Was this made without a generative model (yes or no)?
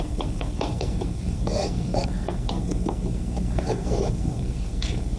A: no